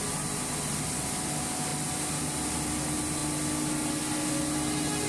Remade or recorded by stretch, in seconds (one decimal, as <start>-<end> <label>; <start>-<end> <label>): 0.0-5.1 recorded